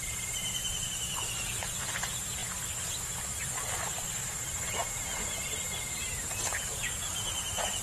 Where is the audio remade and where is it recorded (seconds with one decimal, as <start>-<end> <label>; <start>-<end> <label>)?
0.0-2.4 remade; 2.4-4.7 recorded; 4.7-7.8 remade